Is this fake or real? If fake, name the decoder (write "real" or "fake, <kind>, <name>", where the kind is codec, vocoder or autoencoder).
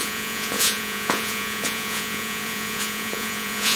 fake, vocoder, Vocos